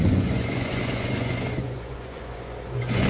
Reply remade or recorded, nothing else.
remade